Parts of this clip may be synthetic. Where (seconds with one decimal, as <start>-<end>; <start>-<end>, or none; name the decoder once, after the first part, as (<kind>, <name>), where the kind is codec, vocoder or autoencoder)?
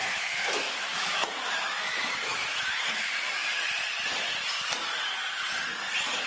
0.0-3.0 (autoencoder, DAC-VAE)